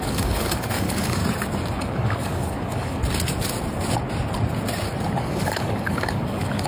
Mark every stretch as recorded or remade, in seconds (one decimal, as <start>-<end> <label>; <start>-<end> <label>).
0.0-1.2 remade; 1.2-1.8 recorded; 1.8-3.0 remade; 3.0-5.2 recorded; 5.2-6.7 remade